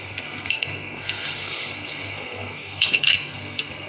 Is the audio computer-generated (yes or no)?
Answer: yes